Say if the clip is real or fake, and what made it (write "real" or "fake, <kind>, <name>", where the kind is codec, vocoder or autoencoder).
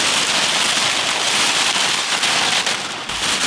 real